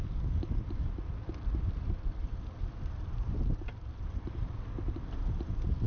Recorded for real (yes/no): yes